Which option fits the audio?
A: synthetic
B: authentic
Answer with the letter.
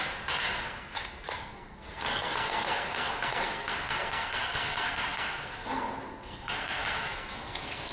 A